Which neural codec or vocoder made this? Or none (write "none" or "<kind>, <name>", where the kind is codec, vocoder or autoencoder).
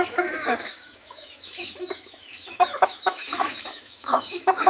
autoencoder, DAC-VAE